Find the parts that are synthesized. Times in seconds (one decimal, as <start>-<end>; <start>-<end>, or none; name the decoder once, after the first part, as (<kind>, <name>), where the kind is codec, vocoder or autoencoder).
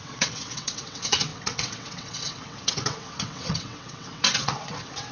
0.0-5.1 (vocoder, WaveNeXt)